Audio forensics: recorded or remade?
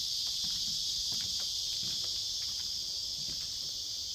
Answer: remade